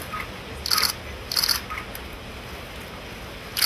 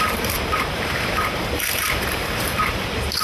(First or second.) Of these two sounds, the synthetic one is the second